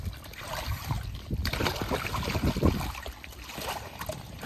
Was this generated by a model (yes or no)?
no